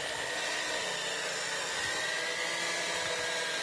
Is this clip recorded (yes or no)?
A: yes